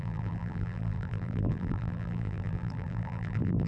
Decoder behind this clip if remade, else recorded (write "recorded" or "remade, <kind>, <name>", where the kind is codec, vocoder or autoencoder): remade, vocoder, BigVGAN v2